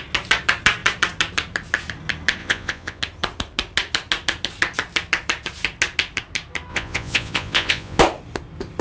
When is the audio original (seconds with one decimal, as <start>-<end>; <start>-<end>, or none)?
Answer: 0.0-2.4; 3.0-6.7; 8.0-8.8

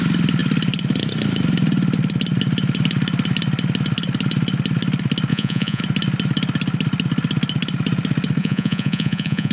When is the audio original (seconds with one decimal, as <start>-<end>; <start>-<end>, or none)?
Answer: 0.0-5.3; 5.8-8.4

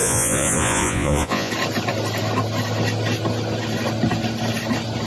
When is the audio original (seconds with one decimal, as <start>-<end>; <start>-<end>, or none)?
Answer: 1.5-5.1